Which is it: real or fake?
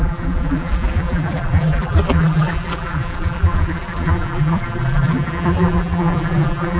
fake